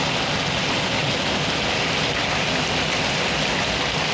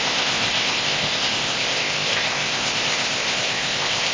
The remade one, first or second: second